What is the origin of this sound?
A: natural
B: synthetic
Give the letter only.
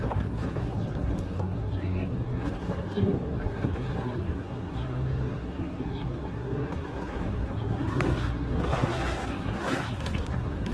B